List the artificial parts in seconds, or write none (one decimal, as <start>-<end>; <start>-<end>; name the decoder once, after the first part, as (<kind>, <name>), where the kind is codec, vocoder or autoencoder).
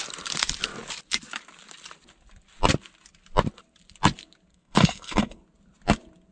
4.5-5.4 (codec, SNAC)